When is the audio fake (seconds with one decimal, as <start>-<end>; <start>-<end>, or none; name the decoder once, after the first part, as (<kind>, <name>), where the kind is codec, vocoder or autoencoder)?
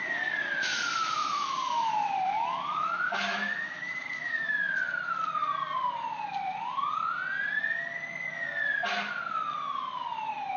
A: 1.2-1.9 (autoencoder, DAC-VAE); 2.3-4.7